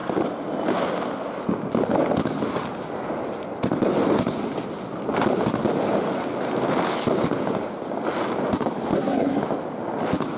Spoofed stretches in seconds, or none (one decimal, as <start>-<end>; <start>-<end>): 8.9-9.4